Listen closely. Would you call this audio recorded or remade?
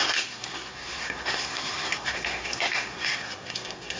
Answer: remade